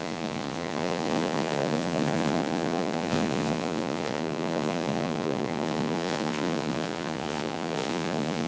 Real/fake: fake